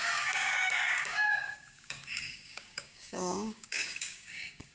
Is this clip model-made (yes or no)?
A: yes